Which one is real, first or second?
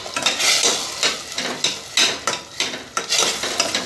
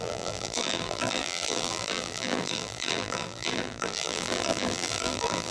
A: first